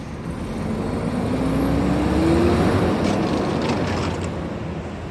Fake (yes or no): no